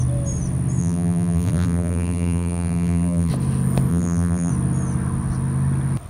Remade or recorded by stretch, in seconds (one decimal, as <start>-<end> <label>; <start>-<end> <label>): 0.0-0.8 recorded; 0.8-3.3 remade; 3.3-3.9 recorded; 3.9-4.5 remade; 4.5-6.1 recorded